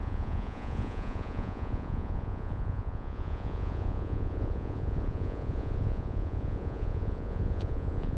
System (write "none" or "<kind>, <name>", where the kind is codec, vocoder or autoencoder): vocoder, Vocos